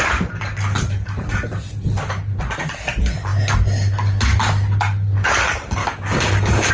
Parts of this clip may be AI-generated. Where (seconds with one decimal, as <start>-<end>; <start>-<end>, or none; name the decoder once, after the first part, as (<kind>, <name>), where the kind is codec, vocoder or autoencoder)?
5.8-6.7 (codec, DAC)